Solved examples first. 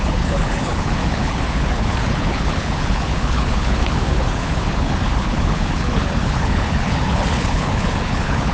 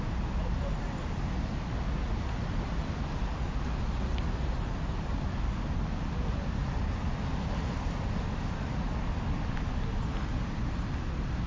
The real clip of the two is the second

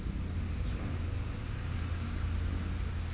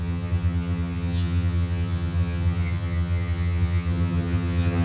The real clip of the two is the first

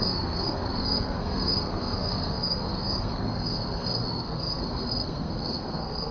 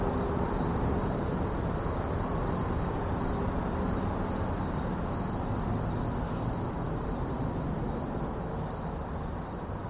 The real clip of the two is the second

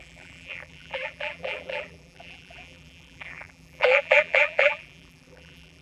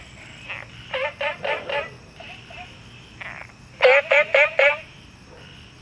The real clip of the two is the second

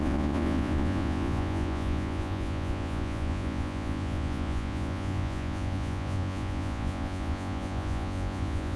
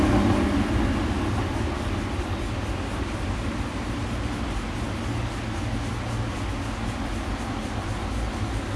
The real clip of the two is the second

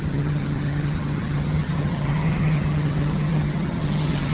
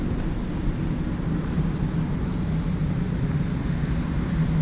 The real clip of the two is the second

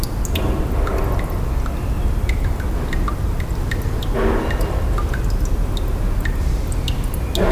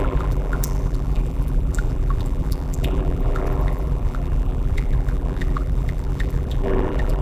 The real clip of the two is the first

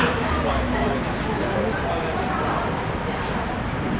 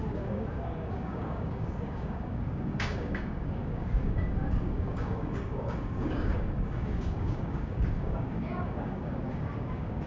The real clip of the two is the first